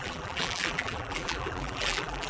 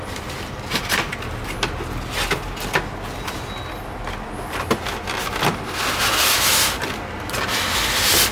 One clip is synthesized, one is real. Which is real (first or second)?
second